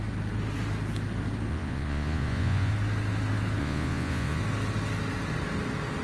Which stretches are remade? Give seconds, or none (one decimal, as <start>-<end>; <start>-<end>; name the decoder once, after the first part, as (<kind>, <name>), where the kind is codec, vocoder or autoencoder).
1.5-2.7 (vocoder, Vocos); 3.6-4.4